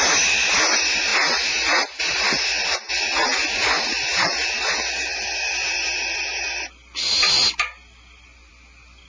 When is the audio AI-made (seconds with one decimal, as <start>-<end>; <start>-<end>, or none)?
none